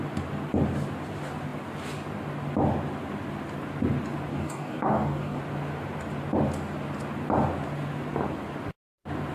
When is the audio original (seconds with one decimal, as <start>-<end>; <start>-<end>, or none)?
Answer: 0.0-4.3; 5.4-9.3